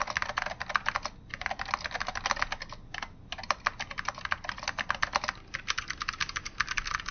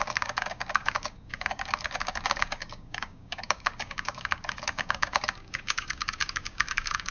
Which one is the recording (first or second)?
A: first